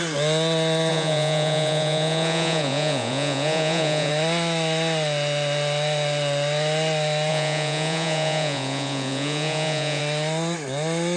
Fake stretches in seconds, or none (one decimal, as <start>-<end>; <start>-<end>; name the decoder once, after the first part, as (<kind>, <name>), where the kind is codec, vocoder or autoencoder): 0.9-4.1 (vocoder, Vocos); 7.3-10.0